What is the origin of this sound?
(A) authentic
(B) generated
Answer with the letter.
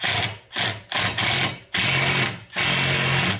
A